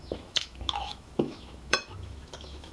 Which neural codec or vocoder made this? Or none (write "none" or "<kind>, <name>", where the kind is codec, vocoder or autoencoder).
autoencoder, DAC-VAE